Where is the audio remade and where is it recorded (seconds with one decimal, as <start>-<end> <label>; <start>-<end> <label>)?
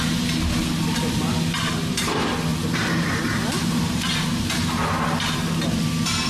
0.0-2.5 recorded; 2.5-4.4 remade; 4.4-6.3 recorded